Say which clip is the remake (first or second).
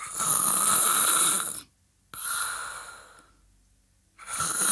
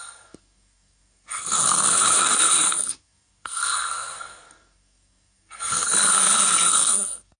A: second